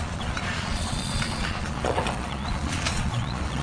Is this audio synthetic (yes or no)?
yes